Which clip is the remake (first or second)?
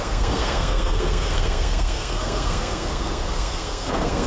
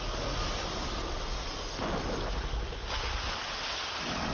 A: first